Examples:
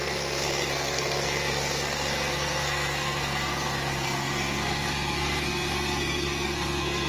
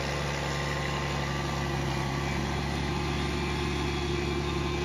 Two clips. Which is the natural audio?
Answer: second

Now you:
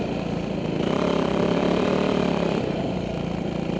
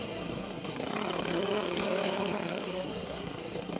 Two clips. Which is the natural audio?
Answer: first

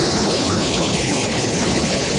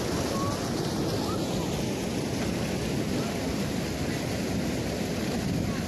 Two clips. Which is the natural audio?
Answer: second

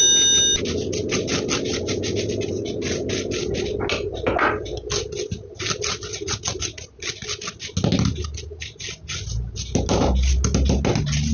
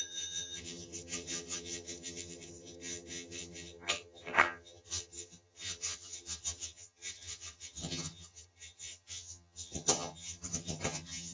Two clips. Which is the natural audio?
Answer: first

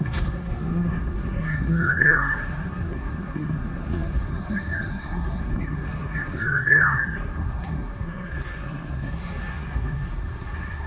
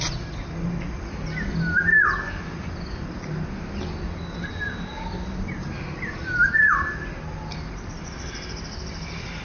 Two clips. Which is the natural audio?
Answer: second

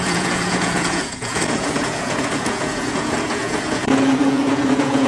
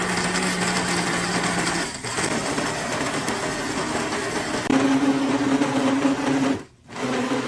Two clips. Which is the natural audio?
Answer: second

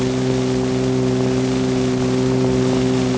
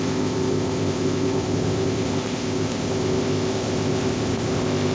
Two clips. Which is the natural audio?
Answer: first